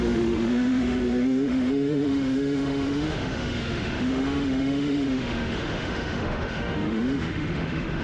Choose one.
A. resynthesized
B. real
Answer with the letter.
A